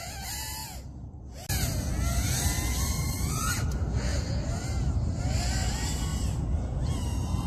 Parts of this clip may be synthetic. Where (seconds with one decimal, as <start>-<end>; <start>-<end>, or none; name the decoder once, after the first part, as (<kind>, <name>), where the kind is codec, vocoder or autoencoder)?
4.1-5.2 (vocoder, BigVGAN v2); 6.1-6.9